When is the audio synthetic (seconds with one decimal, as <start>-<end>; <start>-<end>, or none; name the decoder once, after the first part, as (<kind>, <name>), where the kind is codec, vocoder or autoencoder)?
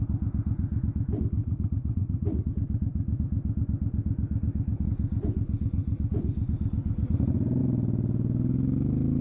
1.4-2.5 (vocoder, Vocos)